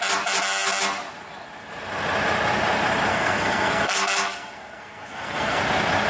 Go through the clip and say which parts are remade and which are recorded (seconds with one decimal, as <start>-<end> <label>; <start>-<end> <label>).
0.0-3.1 recorded; 3.1-5.6 remade; 5.6-6.1 recorded